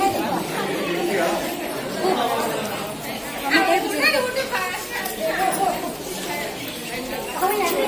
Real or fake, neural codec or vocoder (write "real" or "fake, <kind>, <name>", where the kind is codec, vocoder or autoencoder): real